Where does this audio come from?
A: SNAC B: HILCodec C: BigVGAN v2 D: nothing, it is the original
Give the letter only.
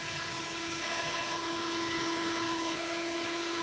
B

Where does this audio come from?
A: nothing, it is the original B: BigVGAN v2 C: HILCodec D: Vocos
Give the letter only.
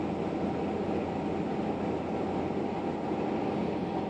A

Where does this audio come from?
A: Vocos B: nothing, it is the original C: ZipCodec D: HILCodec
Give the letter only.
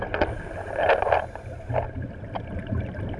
B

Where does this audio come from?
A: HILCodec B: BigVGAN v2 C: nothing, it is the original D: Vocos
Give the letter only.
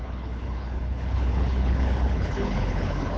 A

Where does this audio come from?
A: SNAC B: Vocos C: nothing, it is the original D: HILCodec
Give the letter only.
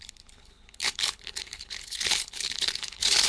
D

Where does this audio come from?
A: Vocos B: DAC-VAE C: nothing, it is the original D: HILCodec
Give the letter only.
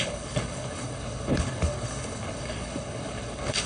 D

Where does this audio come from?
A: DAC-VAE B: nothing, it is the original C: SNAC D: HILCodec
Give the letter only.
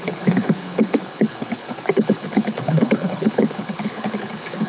D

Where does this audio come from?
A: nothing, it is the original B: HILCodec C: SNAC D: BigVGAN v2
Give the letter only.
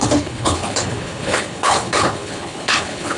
B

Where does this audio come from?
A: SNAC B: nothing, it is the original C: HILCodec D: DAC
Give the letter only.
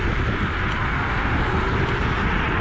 B